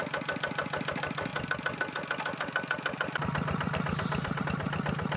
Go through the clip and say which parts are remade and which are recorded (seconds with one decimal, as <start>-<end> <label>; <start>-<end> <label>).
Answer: 0.0-5.2 recorded